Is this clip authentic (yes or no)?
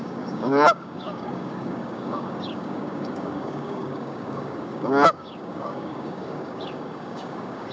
no